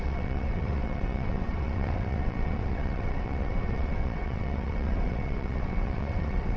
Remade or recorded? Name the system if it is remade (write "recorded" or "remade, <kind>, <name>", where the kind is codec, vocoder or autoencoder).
remade, vocoder, WaveNeXt